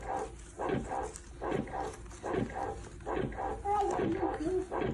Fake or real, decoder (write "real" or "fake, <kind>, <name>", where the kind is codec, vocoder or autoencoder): real